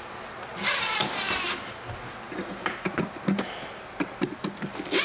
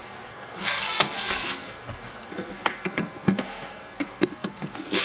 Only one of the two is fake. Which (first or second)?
second